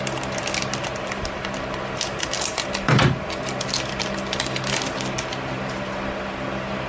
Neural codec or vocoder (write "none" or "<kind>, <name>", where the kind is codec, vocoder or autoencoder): none